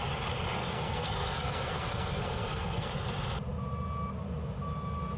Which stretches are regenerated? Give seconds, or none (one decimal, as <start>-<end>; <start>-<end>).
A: 0.6-2.9